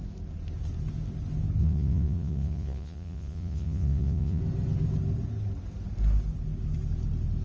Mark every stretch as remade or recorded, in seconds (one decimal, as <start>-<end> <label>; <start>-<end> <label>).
0.0-1.6 recorded; 1.6-4.4 remade; 4.4-7.4 recorded